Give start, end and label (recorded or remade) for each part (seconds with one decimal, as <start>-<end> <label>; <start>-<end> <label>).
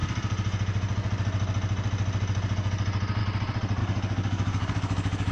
0.0-3.8 recorded; 3.8-5.3 remade